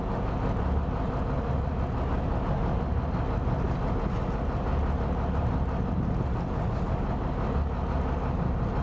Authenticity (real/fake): real